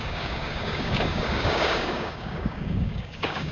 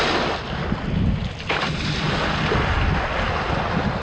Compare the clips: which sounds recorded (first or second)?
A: second